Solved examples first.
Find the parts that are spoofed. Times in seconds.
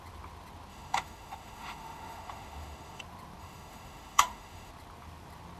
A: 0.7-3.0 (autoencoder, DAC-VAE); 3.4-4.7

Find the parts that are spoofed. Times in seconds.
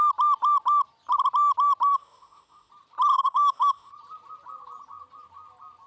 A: 1.9-2.7 (autoencoder, DAC-VAE); 3.1-3.9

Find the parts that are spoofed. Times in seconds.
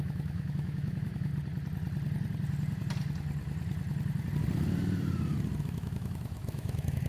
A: 0.0-1.3 (autoencoder, DAC-VAE); 5.6-7.1